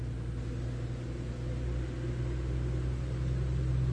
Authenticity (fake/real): real